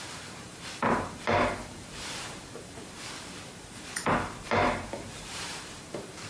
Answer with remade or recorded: remade